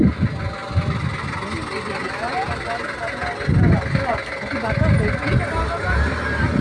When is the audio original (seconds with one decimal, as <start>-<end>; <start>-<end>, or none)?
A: 0.0-6.6